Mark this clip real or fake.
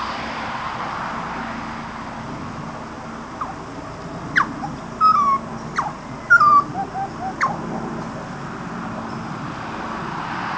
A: real